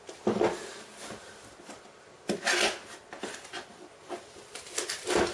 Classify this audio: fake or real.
real